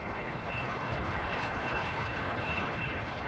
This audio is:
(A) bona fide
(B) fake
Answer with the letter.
B